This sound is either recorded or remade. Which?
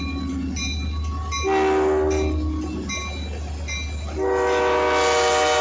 recorded